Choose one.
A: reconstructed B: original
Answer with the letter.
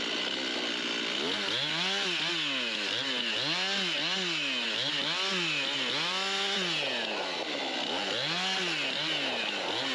B